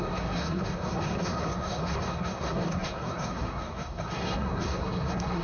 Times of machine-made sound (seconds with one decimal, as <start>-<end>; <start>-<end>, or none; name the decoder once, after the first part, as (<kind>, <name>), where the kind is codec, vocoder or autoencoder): 0.0-5.4 (codec, SNAC)